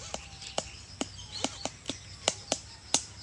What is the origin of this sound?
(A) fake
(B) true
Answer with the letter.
B